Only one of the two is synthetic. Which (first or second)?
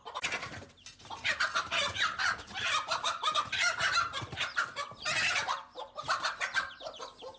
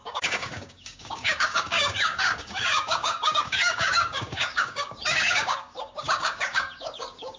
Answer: second